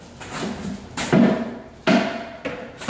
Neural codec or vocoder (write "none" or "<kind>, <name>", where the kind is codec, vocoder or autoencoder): none